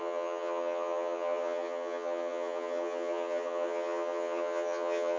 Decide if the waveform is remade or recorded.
remade